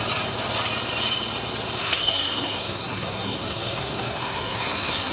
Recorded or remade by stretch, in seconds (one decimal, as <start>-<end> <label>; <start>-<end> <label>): 0.0-1.8 recorded; 1.8-5.1 remade